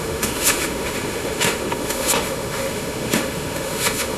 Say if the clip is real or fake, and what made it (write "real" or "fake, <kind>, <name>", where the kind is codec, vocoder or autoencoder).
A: fake, autoencoder, DAC-VAE